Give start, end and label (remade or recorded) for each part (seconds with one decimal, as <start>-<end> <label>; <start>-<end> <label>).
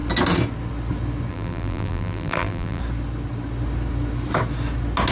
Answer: 0.0-1.3 recorded; 1.3-2.8 remade; 2.8-5.1 recorded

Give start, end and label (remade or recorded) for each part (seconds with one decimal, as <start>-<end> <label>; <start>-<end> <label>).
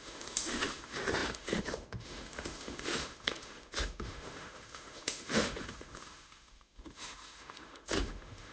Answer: 0.0-8.5 remade